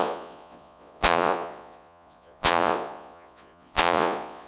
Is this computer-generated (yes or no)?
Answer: yes